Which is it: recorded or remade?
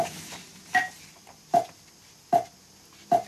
recorded